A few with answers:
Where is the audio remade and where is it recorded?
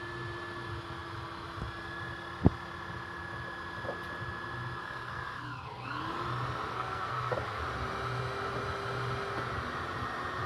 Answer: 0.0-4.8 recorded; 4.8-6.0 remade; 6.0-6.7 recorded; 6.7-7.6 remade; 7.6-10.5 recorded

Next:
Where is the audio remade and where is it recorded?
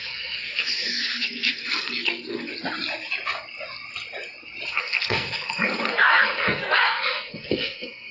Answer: 0.0-2.5 remade; 2.5-4.7 recorded; 4.7-8.1 remade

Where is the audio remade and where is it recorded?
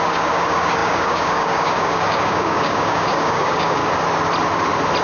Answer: 0.0-3.8 remade; 3.8-5.0 recorded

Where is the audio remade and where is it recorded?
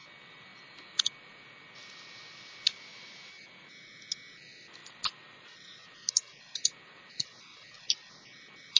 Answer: 0.0-2.9 recorded; 2.9-3.7 remade; 3.7-8.8 recorded